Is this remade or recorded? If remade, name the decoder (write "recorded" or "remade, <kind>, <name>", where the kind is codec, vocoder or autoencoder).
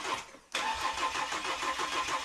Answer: recorded